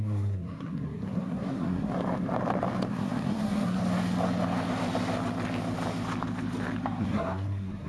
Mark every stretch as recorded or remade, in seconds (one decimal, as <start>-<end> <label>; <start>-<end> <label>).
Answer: 0.0-1.9 remade; 1.9-2.9 recorded; 2.9-3.8 remade; 3.8-7.0 recorded; 7.0-7.9 remade